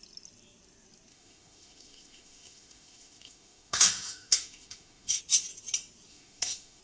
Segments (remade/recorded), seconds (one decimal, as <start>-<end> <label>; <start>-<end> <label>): 0.0-1.1 recorded; 1.1-5.2 remade; 5.2-6.1 recorded; 6.1-6.8 remade